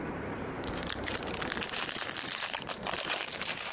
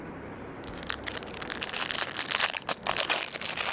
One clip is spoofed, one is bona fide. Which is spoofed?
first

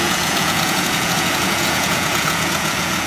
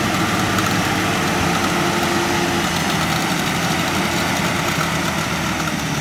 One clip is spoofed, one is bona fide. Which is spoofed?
first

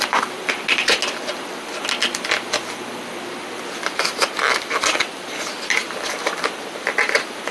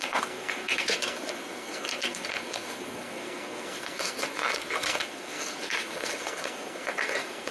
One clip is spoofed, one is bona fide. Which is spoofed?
second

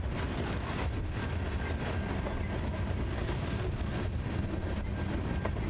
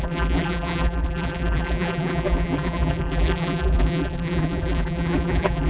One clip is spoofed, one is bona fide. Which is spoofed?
second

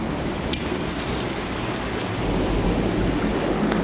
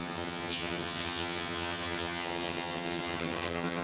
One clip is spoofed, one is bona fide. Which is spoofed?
second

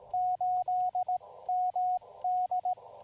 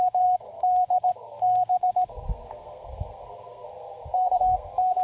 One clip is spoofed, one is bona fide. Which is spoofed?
second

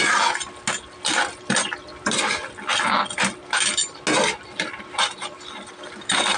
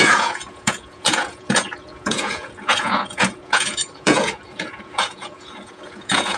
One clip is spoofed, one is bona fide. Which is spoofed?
second